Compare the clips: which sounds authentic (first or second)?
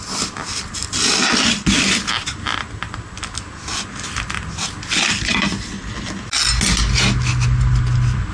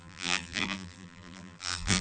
first